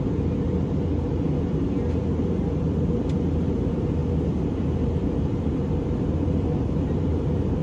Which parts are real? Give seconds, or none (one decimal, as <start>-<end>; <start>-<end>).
0.0-4.0